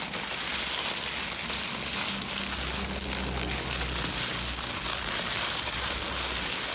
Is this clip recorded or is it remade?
recorded